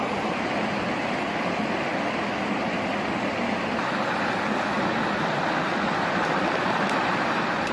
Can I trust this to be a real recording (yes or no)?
yes